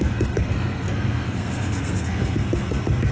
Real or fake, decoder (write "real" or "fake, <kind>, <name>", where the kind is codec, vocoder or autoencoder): fake, codec, SNAC